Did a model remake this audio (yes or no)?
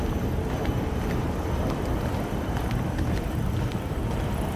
yes